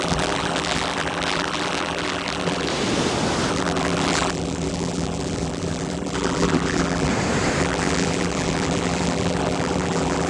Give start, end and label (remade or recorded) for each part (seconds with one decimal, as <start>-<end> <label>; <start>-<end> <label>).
0.0-2.7 remade; 2.7-3.5 recorded; 3.5-7.1 remade; 7.1-7.6 recorded; 7.6-10.3 remade